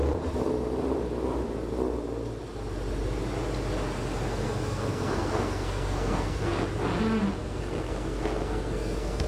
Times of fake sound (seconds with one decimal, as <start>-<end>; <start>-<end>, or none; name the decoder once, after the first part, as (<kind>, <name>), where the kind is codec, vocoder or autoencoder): 4.3-6.6 (codec, SNAC); 7.4-9.3